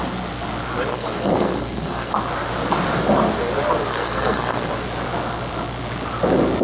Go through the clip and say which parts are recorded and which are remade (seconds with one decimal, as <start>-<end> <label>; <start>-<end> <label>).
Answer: 0.0-0.9 recorded; 0.9-2.1 remade; 2.1-3.9 recorded; 3.9-4.7 remade; 4.7-6.6 recorded